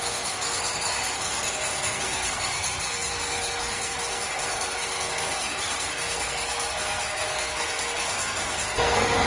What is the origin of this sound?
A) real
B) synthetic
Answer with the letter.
B